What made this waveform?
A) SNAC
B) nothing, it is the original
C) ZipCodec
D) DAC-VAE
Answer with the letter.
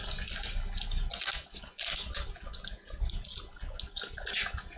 B